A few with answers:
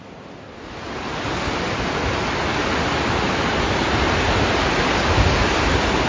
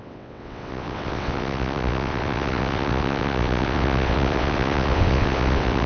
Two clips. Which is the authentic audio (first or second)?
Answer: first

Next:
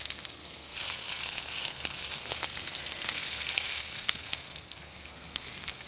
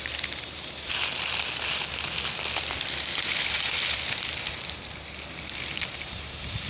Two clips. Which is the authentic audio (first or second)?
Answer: second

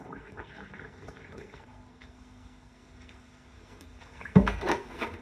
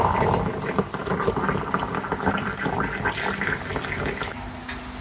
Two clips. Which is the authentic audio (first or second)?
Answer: second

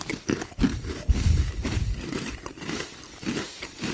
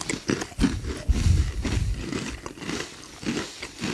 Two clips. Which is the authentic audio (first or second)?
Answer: second